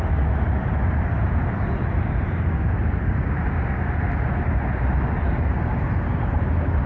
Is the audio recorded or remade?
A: recorded